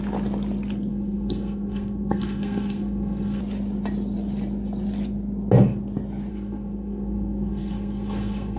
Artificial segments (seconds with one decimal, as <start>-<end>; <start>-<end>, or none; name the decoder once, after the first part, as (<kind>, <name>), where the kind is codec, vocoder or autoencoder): 0.9-3.4 (codec, SNAC); 6.3-8.6